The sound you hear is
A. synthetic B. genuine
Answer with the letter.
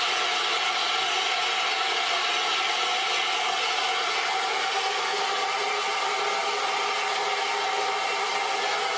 B